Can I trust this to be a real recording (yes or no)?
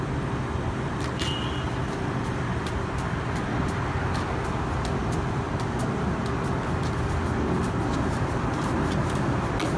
yes